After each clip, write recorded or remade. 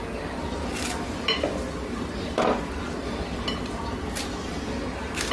recorded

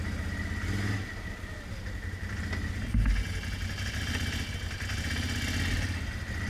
recorded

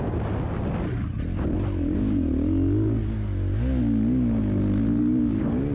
recorded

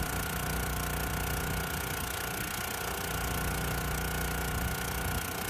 recorded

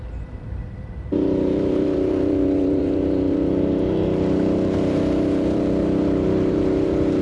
remade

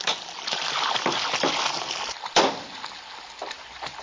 recorded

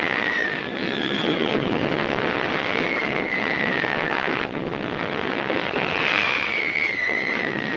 remade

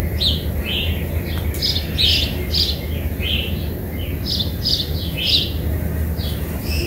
recorded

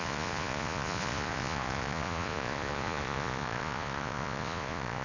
remade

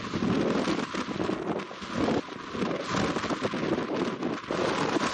recorded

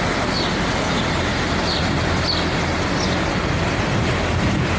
recorded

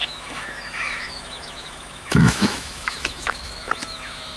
remade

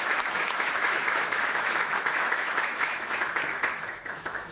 remade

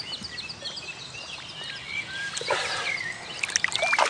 recorded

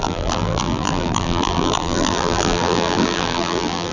remade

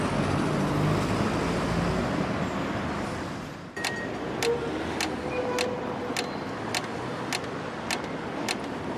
recorded